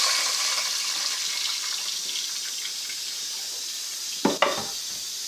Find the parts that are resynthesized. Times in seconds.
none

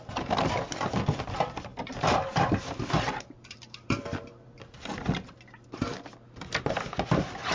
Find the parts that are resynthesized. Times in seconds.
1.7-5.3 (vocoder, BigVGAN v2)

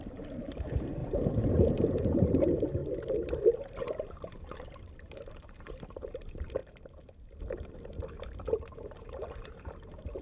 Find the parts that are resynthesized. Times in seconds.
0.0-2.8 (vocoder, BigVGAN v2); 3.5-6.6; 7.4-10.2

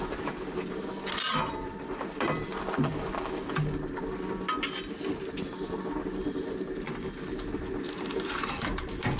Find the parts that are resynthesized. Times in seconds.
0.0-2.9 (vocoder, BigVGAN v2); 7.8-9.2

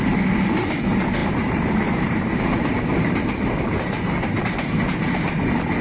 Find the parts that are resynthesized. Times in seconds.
1.2-4.4 (vocoder, BigVGAN v2)

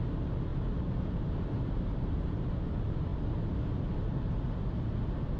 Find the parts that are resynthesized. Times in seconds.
0.5-2.6 (vocoder, BigVGAN v2); 3.1-3.9

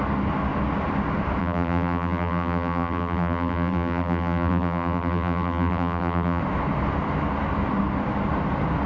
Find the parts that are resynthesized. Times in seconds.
1.4-6.4 (vocoder, BigVGAN v2)